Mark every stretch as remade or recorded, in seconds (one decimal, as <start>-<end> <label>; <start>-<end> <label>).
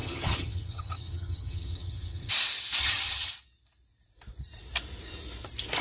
0.0-2.3 remade; 2.3-2.8 recorded; 2.8-3.3 remade; 3.3-5.8 recorded